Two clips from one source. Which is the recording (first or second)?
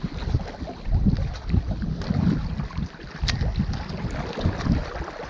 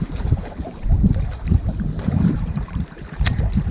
first